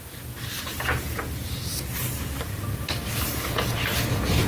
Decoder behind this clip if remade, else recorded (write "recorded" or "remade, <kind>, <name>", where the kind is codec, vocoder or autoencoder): remade, vocoder, BigVGAN v2